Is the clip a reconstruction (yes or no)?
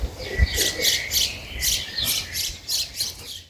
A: no